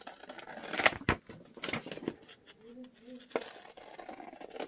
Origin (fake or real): real